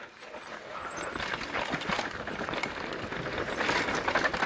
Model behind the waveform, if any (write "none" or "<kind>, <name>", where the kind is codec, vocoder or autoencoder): none